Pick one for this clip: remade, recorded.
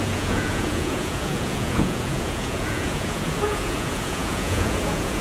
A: remade